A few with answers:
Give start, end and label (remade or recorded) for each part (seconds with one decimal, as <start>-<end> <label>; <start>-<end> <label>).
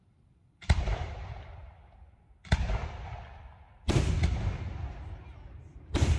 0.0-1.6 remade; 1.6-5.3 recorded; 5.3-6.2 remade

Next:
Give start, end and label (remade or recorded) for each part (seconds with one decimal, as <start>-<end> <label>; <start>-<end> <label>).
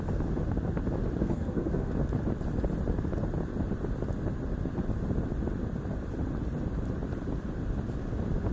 0.0-1.2 recorded; 1.2-1.9 remade; 1.9-8.5 recorded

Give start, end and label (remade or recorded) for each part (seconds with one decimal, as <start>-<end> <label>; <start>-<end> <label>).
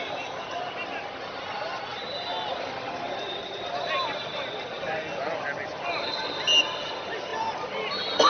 0.0-8.3 recorded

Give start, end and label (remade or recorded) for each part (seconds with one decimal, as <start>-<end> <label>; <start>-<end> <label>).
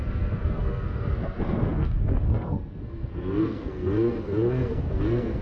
0.0-5.4 remade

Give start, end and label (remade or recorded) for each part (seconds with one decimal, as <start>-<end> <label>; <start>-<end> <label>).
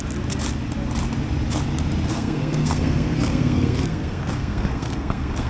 0.0-2.1 recorded; 2.1-5.5 remade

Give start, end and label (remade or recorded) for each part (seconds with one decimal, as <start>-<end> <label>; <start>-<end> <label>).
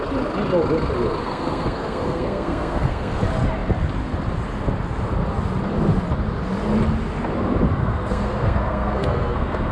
0.0-1.2 recorded; 1.2-3.2 remade; 3.2-7.8 recorded; 7.8-9.7 remade